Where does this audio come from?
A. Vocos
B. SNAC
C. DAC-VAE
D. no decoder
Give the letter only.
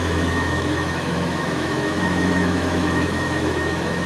C